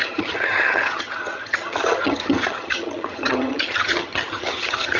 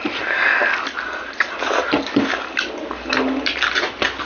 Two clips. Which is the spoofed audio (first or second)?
first